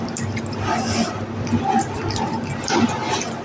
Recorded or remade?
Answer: recorded